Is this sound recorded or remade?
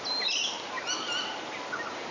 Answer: recorded